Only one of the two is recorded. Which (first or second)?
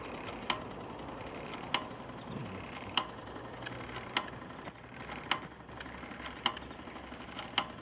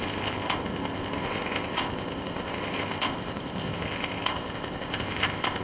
first